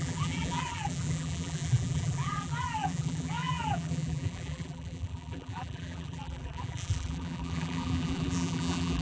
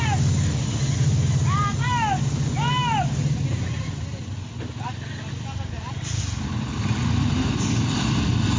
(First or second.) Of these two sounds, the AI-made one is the first